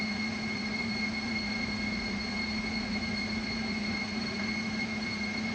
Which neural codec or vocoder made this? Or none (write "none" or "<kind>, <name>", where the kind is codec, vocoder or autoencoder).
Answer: vocoder, Vocos